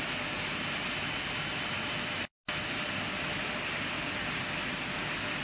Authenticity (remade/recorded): recorded